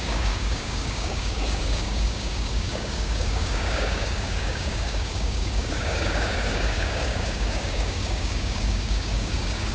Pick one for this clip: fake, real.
fake